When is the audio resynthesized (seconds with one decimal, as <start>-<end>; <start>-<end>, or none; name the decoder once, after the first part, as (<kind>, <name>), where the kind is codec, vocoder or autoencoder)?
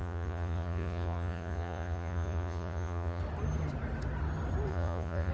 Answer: 0.0-3.2 (vocoder, Vocos); 4.7-5.3